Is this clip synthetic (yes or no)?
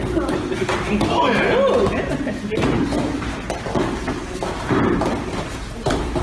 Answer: no